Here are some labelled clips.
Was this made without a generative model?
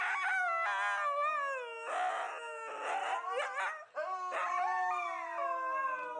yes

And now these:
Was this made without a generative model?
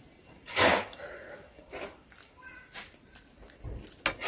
yes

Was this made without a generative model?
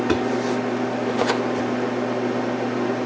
yes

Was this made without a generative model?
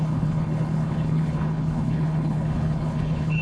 no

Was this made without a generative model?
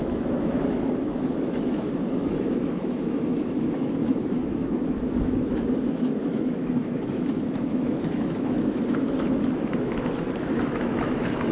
no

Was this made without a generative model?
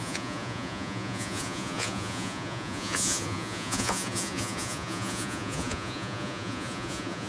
no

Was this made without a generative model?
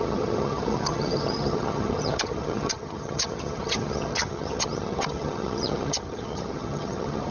no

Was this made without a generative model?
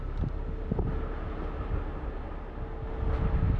yes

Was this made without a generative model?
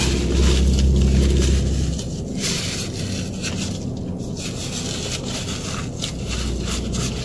yes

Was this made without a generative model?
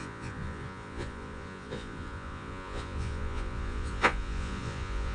no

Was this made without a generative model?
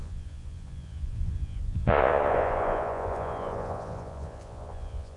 no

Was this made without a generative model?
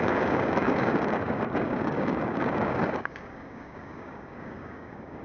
no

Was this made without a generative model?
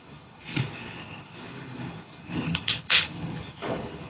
no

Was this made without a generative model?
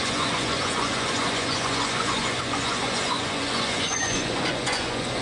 no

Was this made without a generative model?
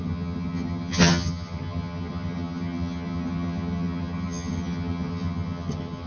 no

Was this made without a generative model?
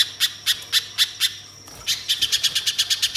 yes